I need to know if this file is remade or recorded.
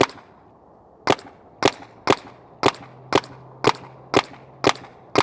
recorded